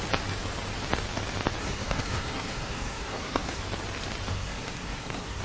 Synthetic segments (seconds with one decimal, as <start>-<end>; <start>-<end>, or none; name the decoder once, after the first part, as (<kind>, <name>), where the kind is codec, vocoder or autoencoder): 1.6-3.6 (codec, SNAC); 4.3-5.4